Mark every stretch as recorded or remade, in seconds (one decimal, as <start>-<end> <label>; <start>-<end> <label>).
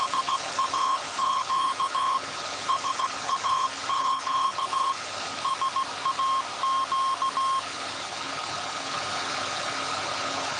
0.0-5.5 remade; 5.5-7.6 recorded; 7.6-10.6 remade